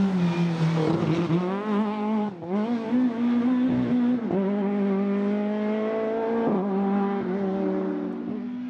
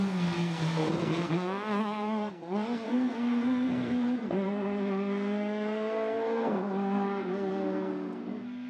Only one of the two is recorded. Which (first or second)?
first